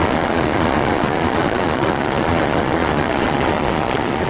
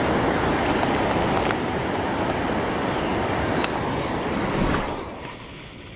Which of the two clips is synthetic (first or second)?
first